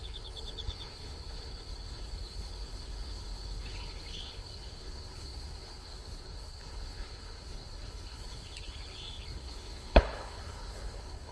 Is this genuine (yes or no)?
no